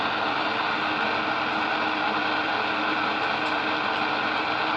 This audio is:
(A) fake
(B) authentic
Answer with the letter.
B